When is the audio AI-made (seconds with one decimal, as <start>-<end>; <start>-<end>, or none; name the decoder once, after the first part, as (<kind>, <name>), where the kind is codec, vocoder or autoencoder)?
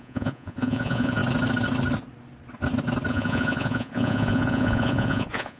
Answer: 0.0-1.2 (vocoder, Vocos); 3.1-5.6